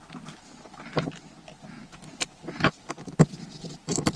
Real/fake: real